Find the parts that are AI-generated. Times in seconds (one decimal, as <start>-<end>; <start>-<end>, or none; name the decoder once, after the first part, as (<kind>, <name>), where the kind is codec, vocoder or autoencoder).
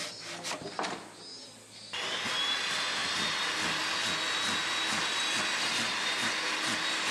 none